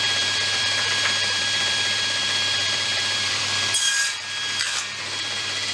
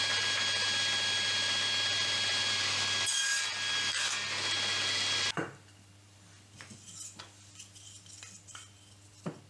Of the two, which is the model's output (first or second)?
first